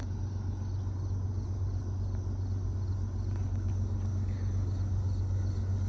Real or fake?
real